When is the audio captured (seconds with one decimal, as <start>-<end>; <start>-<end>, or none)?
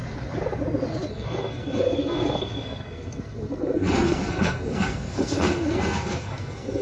0.0-1.1